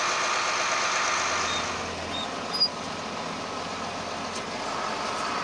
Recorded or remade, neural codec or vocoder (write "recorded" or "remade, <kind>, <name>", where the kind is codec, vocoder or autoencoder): recorded